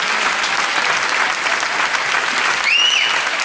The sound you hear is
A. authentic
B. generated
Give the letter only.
A